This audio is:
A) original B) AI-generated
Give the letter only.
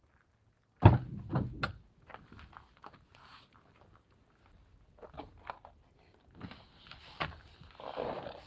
A